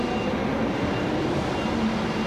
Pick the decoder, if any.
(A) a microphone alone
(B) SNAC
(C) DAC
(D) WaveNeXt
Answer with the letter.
A